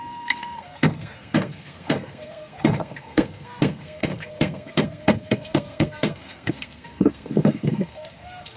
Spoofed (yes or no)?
yes